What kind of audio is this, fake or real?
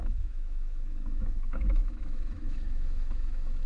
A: fake